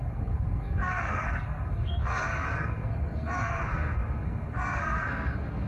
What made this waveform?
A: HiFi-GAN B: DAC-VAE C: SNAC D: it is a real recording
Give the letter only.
C